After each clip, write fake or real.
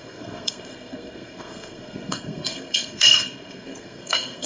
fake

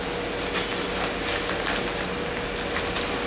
real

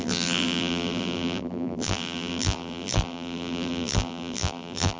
fake